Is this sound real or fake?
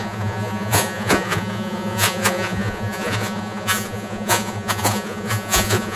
fake